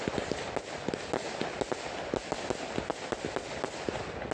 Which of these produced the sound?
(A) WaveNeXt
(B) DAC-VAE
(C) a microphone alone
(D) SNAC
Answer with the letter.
C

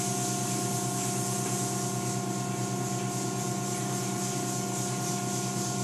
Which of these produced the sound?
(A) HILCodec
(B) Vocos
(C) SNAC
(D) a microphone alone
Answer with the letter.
D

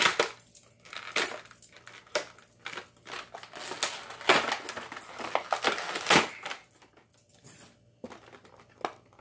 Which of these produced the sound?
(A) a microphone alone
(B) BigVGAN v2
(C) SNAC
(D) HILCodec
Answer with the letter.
A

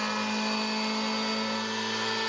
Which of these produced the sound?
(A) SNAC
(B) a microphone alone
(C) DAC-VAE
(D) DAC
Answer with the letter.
B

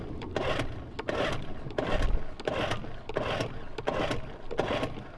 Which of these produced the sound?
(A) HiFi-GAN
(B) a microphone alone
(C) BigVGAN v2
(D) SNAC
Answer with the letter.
B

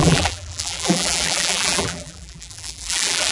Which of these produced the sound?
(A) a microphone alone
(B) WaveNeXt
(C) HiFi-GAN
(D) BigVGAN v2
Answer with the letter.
D